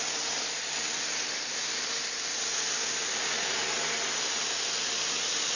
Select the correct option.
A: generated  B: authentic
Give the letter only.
B